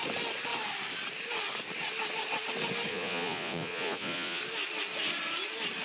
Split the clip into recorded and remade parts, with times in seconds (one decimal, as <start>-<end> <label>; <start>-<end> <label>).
0.0-2.9 recorded; 2.9-4.4 remade; 4.4-5.8 recorded